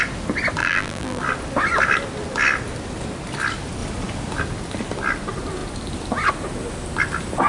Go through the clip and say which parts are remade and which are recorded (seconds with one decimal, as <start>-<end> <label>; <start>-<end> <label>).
0.0-0.6 recorded; 0.6-1.2 remade; 1.2-7.5 recorded

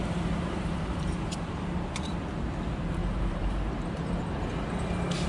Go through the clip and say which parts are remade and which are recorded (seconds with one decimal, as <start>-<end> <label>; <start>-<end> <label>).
0.0-2.1 remade; 2.1-3.0 recorded; 3.0-4.1 remade; 4.1-5.3 recorded

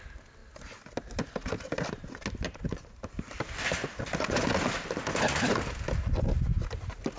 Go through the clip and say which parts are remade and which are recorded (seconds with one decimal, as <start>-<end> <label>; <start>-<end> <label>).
0.0-7.2 recorded

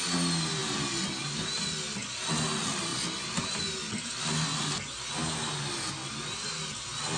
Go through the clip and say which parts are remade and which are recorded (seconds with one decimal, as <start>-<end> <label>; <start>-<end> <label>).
0.0-7.2 recorded

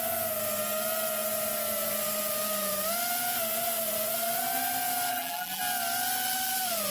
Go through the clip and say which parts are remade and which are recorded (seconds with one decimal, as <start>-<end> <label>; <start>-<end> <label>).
0.0-5.1 recorded; 5.1-5.6 remade; 5.6-6.9 recorded